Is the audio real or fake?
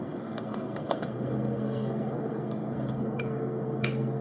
fake